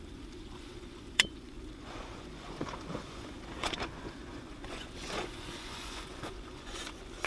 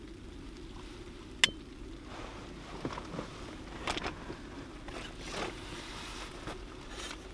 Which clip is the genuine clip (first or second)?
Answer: second